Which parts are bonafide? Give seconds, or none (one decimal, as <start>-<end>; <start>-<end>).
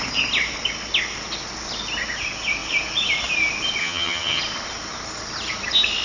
0.0-3.8; 4.4-6.0